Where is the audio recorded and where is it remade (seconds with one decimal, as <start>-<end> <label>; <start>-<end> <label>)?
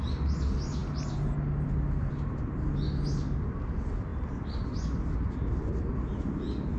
0.0-6.8 recorded